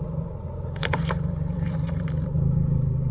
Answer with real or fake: fake